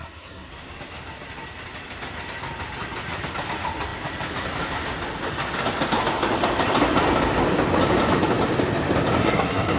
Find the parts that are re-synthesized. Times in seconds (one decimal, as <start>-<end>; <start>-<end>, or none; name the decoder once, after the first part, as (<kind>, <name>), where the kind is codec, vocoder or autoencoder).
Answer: 0.0-0.5 (codec, SNAC); 9.2-9.8